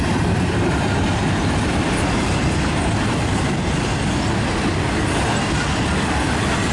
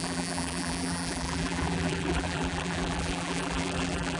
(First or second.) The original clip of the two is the first